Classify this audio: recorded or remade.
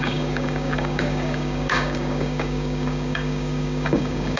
remade